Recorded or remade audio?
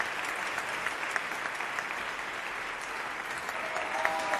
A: recorded